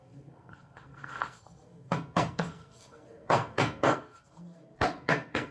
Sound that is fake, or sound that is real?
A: fake